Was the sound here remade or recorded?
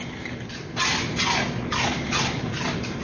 recorded